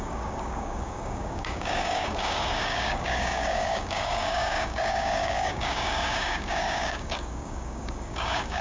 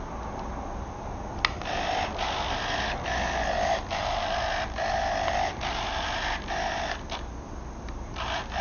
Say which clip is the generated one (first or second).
first